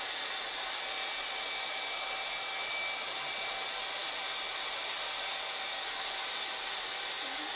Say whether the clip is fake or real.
real